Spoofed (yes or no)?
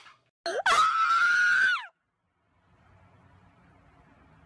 no